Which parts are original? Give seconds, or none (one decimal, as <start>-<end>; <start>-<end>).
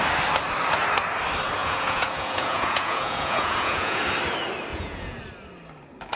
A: 0.0-1.6; 4.0-4.7; 5.2-6.2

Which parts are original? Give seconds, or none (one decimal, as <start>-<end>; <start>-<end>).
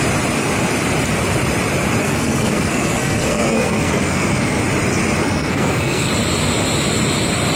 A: 0.0-2.0; 4.6-5.2; 6.1-7.6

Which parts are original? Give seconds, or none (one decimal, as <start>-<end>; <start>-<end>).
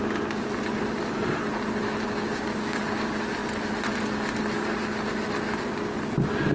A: 0.0-2.3; 2.8-6.5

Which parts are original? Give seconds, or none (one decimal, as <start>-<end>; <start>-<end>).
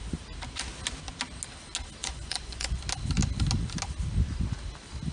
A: 0.0-2.0; 2.8-5.1